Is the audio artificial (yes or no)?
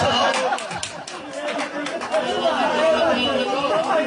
no